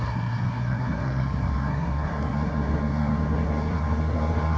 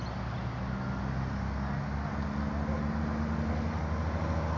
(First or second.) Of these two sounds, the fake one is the first